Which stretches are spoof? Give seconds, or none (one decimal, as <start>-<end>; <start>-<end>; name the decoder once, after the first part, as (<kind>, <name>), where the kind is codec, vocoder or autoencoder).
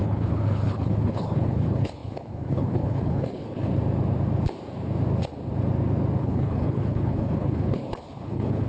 0.0-3.7 (codec, HILCodec); 6.2-8.7